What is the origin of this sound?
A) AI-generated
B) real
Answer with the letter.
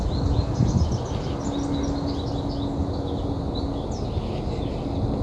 B